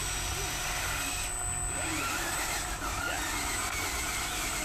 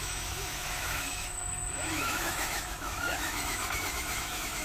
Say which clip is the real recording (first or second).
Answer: first